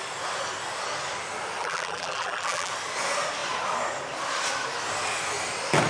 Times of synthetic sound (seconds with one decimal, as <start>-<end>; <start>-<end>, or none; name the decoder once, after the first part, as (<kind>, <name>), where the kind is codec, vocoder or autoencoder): 1.6-2.7 (vocoder, BigVGAN v2)